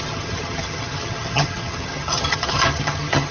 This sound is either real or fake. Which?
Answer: fake